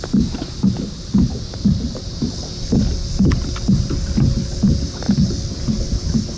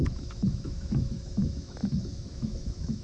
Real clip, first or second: first